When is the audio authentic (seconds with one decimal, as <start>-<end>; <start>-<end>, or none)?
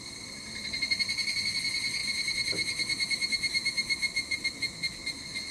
0.0-2.0; 4.4-5.5